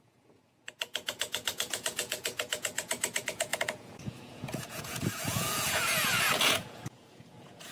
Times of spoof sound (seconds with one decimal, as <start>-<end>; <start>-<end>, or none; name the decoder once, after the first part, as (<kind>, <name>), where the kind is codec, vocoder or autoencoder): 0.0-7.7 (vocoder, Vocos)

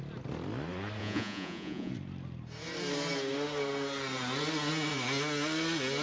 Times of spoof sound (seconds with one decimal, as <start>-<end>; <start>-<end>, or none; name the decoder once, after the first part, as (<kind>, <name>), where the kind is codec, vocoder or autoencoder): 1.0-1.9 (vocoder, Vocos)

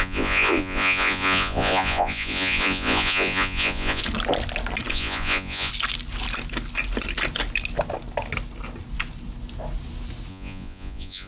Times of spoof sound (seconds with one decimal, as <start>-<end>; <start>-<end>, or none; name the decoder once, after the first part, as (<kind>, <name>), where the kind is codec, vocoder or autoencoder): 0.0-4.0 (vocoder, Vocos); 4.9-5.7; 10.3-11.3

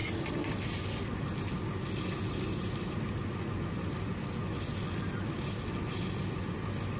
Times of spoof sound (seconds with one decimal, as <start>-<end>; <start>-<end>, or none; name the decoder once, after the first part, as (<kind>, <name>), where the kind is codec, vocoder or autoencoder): none